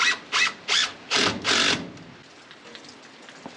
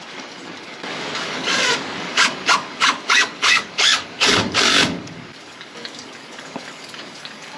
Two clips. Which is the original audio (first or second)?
first